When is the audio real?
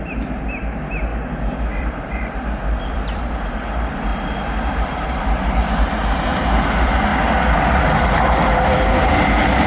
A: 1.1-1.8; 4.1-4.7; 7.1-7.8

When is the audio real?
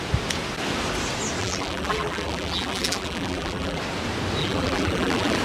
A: 0.0-1.4; 3.8-4.4